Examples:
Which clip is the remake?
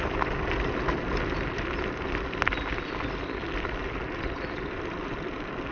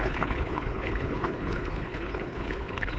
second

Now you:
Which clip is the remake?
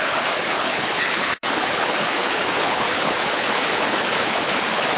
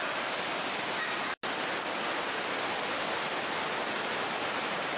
first